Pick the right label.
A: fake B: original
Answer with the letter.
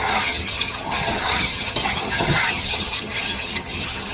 A